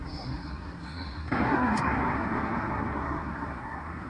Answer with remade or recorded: remade